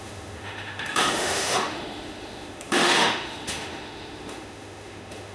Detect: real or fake fake